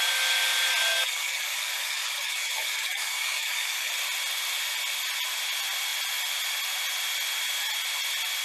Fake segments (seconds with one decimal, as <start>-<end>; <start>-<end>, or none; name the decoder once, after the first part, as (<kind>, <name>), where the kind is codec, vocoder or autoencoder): 0.9-3.9 (codec, DAC)